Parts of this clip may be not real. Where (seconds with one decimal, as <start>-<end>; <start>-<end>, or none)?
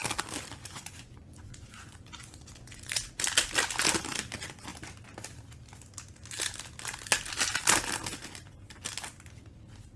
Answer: 0.6-3.1